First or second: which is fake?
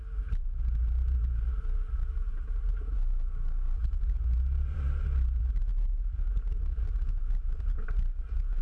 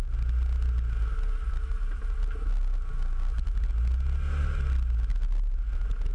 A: first